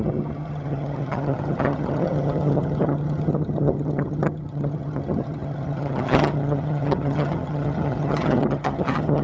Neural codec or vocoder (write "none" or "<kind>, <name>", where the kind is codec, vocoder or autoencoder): vocoder, HiFi-GAN